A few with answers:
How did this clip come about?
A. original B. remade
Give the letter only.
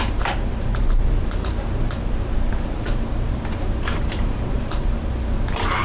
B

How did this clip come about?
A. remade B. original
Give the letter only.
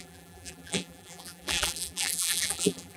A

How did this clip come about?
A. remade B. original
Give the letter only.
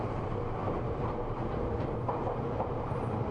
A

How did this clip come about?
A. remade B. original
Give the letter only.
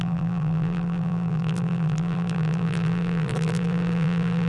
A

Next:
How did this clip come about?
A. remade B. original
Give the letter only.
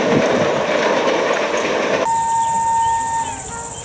B